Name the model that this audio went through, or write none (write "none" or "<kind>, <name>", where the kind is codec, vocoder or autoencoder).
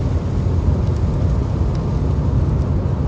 none